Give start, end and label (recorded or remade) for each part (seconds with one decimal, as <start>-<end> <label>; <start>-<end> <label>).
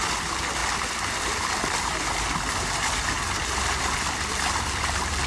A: 0.0-5.3 recorded